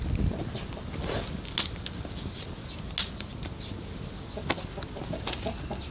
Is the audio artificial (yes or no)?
no